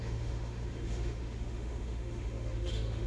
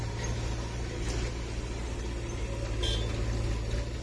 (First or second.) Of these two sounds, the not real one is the first